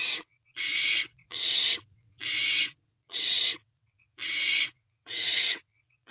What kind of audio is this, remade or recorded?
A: remade